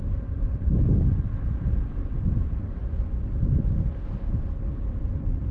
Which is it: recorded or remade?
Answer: remade